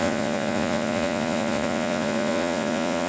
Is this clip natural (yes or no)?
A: no